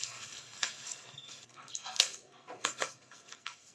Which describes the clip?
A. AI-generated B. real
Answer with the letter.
A